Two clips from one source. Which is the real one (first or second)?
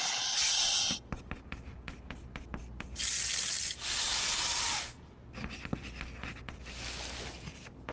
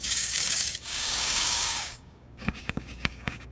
first